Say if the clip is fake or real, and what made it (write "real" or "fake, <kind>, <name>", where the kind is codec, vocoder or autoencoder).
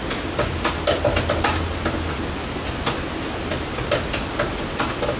real